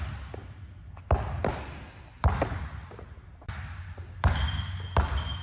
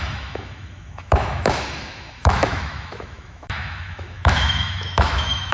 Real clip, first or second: first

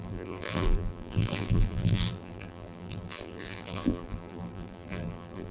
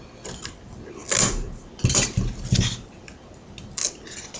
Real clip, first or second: second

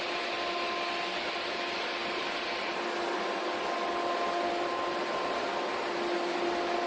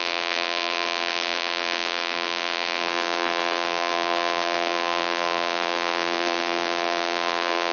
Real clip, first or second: first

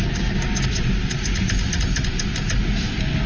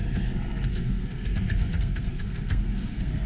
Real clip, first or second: first